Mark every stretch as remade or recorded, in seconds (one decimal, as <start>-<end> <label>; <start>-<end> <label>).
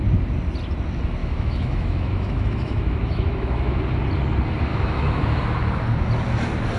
0.0-1.2 recorded; 1.2-3.8 remade; 3.8-4.7 recorded; 4.7-5.4 remade; 5.4-6.8 recorded